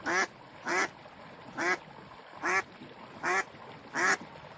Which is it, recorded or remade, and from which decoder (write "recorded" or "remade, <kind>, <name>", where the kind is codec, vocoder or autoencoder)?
recorded